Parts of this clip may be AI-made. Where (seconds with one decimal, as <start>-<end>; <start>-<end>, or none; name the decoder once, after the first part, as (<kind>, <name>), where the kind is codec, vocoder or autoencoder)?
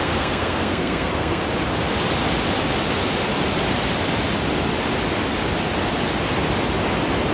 0.0-1.4 (codec, SNAC)